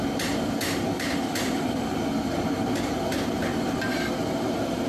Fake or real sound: fake